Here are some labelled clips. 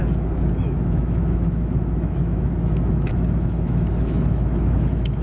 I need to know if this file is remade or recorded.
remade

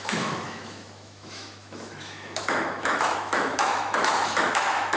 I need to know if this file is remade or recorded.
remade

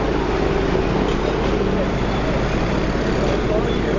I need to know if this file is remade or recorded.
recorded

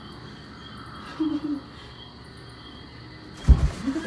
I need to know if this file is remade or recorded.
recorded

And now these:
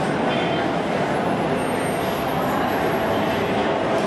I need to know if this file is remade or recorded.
recorded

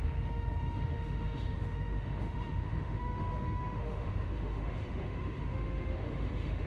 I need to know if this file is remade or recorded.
remade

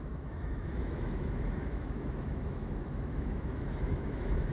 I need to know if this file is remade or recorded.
remade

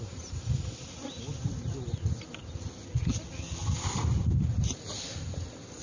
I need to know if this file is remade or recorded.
recorded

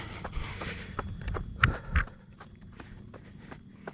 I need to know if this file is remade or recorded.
recorded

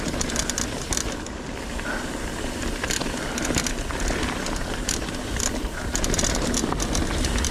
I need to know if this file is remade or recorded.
recorded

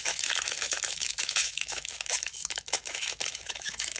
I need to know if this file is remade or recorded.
remade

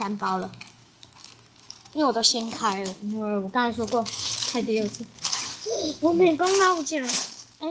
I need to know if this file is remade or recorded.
remade